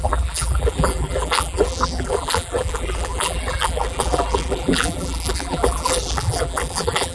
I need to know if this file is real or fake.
fake